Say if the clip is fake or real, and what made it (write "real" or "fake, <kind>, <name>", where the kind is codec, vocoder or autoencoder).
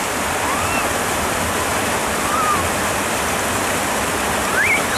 real